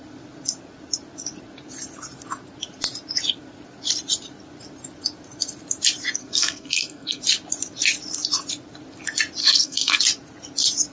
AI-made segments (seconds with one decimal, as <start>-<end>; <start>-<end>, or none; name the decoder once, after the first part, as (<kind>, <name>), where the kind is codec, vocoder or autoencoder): 6.2-7.2 (codec, SNAC); 9.4-10.0